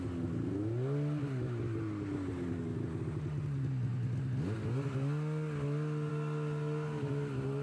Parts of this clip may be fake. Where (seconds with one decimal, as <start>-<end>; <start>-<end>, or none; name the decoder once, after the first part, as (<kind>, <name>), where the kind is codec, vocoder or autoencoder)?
none